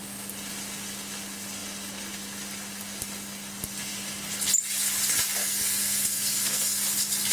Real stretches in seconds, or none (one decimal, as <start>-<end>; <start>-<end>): 0.0-5.4; 6.8-7.3

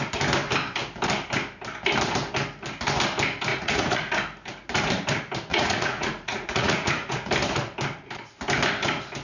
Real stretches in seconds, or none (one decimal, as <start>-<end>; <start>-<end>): 0.0-3.5; 4.1-5.5; 7.3-9.2

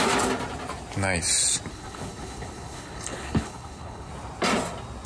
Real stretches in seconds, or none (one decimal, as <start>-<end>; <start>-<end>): 0.0-1.7; 4.1-5.1

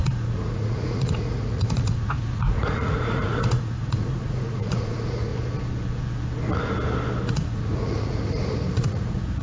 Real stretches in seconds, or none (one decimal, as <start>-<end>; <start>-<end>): 5.3-7.3

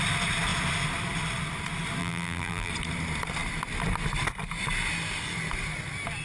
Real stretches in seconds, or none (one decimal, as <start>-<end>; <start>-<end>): 0.0-2.0; 2.7-6.2

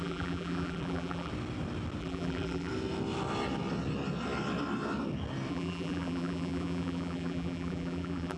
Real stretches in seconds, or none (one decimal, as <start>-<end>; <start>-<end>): 1.3-2.0; 2.7-5.5

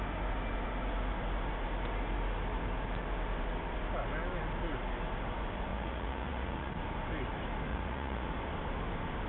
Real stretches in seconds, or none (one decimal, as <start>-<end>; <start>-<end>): 0.0-5.7; 6.7-7.7; 8.3-9.3